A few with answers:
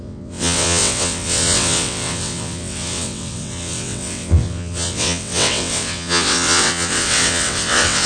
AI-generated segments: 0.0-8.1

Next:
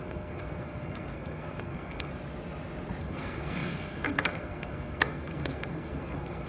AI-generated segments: 0.0-2.1; 3.0-6.5

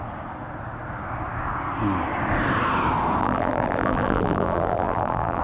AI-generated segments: 3.2-5.4

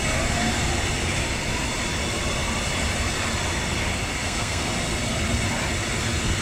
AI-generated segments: 4.2-4.7

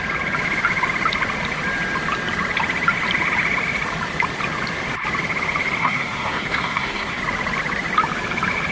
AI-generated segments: 5.8-7.2

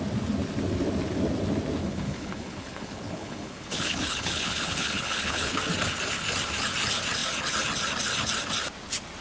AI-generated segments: 1.8-5.6

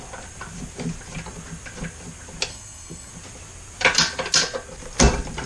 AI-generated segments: 2.5-3.1